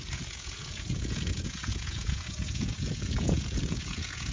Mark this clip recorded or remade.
remade